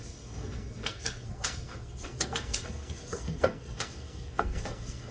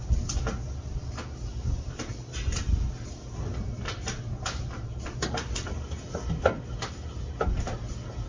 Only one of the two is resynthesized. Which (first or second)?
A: first